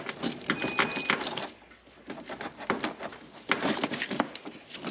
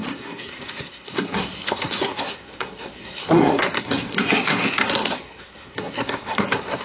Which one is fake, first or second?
second